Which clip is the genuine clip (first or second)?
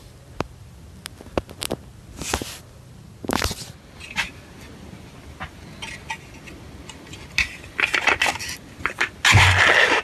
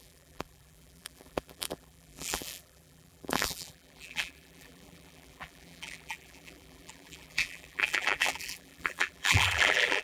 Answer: first